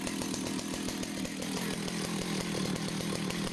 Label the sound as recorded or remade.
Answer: recorded